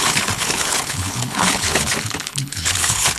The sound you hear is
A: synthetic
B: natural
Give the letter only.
A